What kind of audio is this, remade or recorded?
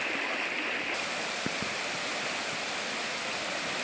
recorded